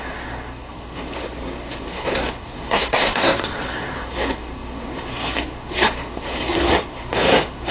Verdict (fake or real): fake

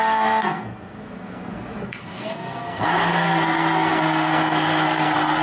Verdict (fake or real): fake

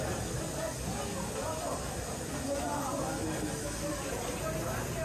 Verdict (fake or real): real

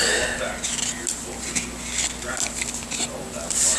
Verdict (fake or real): real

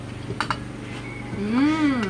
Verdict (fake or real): real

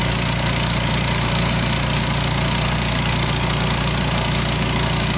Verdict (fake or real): real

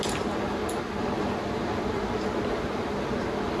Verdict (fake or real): real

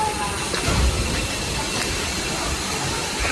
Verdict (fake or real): real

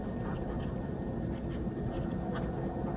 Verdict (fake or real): real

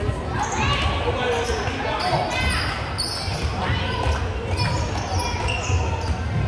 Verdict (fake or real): real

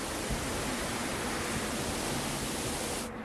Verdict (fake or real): real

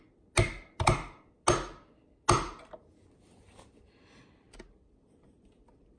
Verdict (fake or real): real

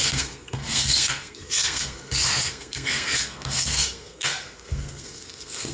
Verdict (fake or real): fake